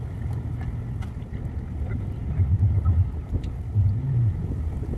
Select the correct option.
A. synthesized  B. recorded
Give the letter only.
B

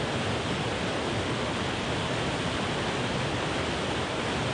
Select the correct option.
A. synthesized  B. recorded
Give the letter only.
B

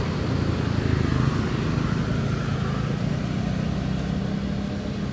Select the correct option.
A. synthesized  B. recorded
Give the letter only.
B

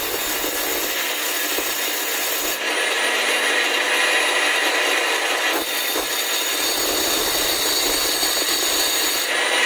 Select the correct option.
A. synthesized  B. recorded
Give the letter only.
B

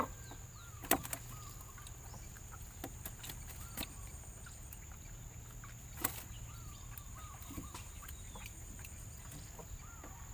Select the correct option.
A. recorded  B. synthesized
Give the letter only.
A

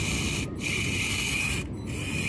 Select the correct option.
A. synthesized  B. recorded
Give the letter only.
B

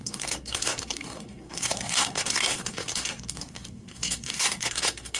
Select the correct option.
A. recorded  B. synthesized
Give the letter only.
B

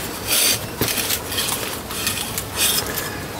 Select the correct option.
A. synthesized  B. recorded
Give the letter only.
B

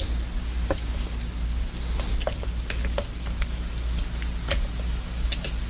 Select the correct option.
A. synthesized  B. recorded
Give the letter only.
B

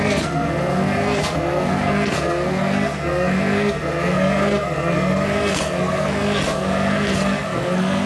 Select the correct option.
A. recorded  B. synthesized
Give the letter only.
B